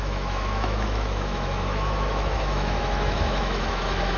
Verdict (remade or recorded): remade